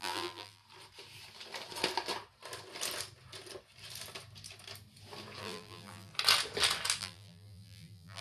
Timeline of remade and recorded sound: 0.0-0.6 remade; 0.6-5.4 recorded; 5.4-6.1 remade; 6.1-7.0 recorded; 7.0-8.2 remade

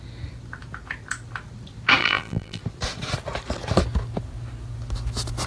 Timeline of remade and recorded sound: 0.0-2.0 recorded; 2.0-2.6 remade; 2.6-5.5 recorded

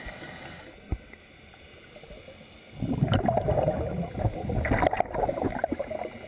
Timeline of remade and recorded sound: 0.0-6.3 recorded